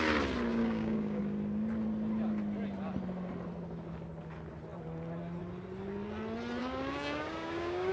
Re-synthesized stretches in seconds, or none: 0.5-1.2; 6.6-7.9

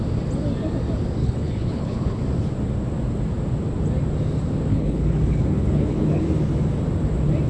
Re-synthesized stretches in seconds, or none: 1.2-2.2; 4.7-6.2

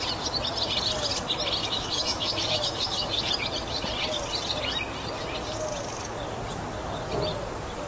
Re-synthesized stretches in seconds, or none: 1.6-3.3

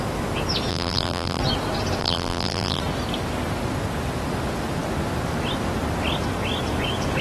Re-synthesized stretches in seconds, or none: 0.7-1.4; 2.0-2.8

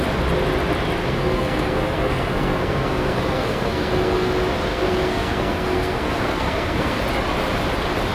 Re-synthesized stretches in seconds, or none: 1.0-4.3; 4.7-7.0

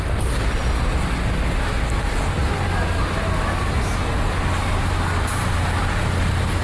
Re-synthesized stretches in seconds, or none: none